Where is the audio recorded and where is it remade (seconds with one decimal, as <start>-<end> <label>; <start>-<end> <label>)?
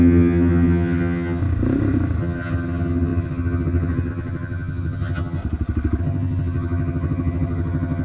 0.0-1.4 remade; 1.4-2.2 recorded; 2.2-5.4 remade; 5.4-6.0 recorded; 6.0-8.0 remade